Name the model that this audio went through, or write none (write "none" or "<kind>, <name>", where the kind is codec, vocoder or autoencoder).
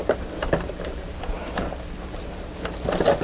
vocoder, BigVGAN v2